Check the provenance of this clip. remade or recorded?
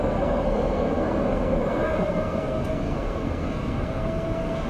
remade